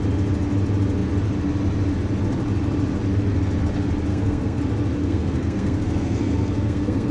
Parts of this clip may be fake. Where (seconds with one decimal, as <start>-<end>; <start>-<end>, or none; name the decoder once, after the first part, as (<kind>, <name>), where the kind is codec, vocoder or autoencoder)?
4.1-4.6 (codec, SNAC); 5.0-7.1